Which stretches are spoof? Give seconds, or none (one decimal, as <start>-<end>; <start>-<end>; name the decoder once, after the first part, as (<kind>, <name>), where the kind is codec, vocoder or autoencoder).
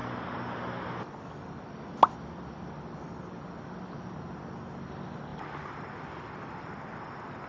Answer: none